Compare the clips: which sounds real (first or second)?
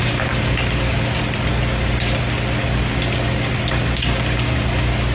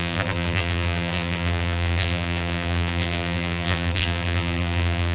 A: first